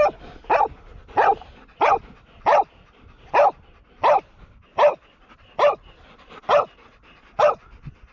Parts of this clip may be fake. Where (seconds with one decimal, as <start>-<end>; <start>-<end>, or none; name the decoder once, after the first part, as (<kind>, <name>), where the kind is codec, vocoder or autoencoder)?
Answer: none